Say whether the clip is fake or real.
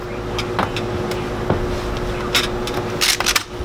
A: real